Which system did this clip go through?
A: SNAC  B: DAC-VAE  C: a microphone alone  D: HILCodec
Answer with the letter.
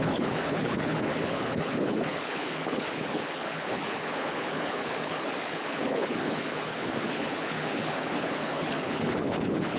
D